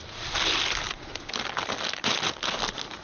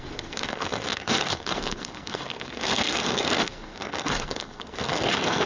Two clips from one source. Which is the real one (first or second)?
first